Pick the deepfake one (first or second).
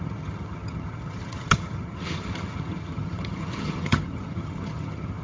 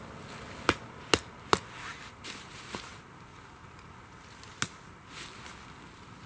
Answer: first